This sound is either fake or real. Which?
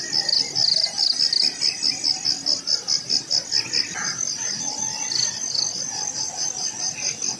real